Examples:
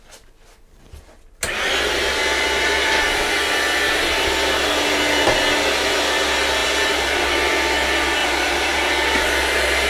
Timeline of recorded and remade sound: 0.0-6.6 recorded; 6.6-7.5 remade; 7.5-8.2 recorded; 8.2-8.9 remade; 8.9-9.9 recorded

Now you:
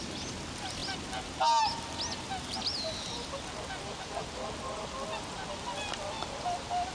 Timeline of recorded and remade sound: 0.0-6.9 recorded